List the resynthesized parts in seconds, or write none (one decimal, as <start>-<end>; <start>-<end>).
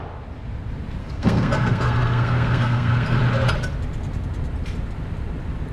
1.0-3.2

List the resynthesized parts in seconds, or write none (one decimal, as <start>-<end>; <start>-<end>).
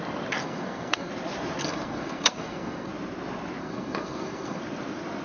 0.4-1.1; 1.6-2.9; 3.6-4.6